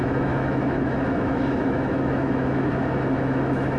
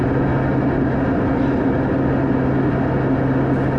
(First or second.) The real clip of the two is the second